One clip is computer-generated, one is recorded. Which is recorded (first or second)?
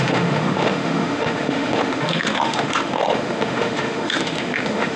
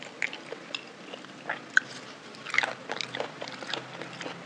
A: second